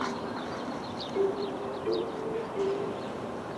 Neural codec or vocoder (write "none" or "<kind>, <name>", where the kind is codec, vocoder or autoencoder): vocoder, BigVGAN v2